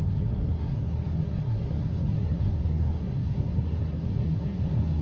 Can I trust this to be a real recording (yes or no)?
no